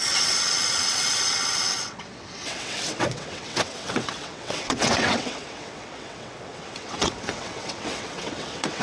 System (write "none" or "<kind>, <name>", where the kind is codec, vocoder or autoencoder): vocoder, WaveNeXt